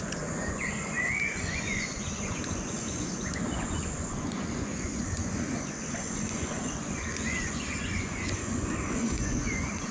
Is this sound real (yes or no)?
no